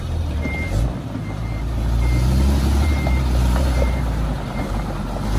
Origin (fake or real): fake